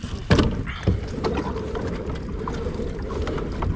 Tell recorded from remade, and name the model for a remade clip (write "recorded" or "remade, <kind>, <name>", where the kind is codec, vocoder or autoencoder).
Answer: remade, vocoder, BigVGAN v2